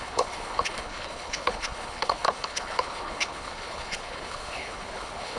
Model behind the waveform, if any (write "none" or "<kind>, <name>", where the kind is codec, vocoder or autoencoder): codec, HILCodec